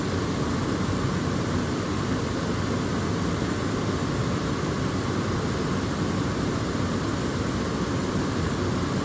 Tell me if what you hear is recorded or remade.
recorded